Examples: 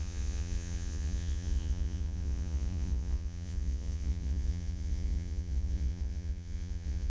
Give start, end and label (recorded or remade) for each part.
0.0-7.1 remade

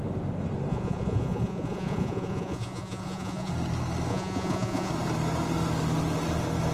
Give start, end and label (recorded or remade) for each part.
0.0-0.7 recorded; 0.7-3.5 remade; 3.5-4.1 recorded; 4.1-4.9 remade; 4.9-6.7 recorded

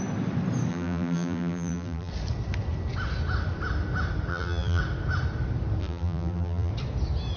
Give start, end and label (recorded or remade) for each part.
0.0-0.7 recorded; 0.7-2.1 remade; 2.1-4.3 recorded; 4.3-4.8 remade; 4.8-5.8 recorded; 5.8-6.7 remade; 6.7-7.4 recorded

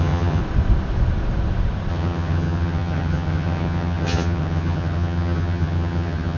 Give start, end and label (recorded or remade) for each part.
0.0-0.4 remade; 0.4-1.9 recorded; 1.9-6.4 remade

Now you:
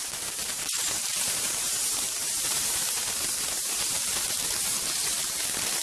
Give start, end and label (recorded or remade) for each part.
0.0-0.4 recorded; 0.4-3.9 remade; 3.9-5.8 recorded